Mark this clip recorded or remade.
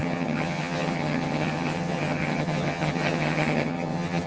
remade